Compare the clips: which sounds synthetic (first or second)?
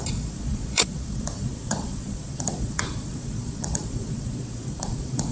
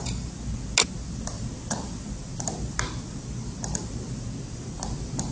first